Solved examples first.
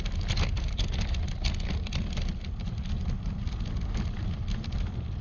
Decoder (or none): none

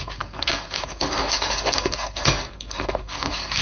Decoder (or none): codec, SNAC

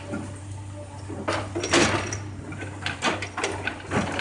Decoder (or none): none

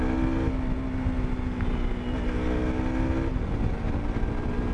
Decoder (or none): none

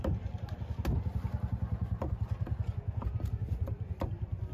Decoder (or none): none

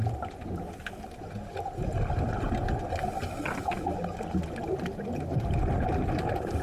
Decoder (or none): none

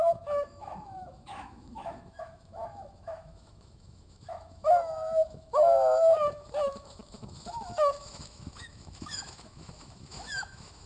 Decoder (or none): autoencoder, DAC-VAE